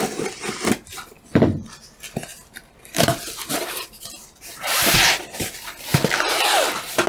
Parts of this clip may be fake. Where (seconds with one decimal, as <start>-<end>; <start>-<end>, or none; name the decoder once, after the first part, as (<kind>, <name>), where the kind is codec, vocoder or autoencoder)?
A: 2.3-5.2 (vocoder, BigVGAN v2)